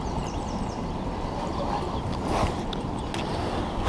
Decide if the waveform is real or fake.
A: real